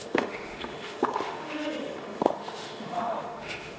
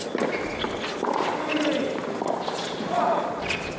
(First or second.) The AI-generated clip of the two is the first